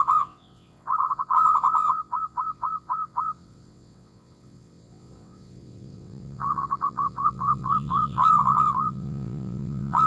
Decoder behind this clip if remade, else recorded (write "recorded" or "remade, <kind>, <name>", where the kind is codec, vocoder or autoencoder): remade, vocoder, WaveNeXt